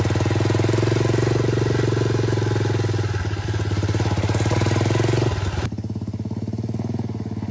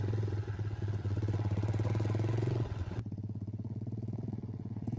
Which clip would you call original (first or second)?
first